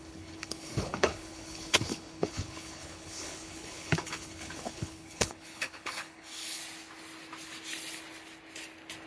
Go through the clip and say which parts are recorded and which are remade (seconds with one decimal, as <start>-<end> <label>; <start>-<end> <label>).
0.0-6.6 remade; 6.6-9.1 recorded